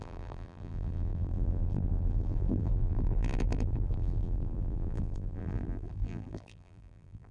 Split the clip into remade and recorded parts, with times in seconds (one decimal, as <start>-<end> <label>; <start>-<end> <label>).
0.0-7.3 remade